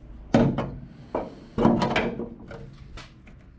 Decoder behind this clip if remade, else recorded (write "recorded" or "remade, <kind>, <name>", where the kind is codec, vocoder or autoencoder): recorded